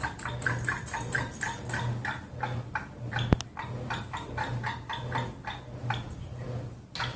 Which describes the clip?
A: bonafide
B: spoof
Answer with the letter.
A